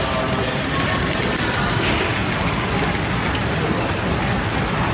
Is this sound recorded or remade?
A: recorded